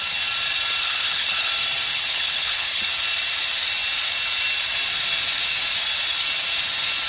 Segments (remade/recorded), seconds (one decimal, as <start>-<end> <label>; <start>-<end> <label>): 0.0-0.8 recorded; 0.8-1.5 remade; 1.5-1.9 recorded; 1.9-2.8 remade; 2.8-7.1 recorded